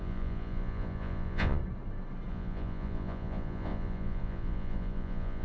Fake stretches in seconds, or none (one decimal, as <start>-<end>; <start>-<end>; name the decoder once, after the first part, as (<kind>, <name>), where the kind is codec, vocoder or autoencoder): 0.0-1.6 (vocoder, Vocos); 2.3-5.4